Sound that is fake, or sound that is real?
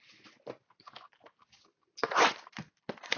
real